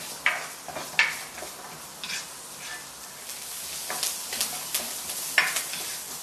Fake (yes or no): no